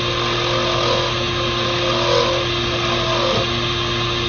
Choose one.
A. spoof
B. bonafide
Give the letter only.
B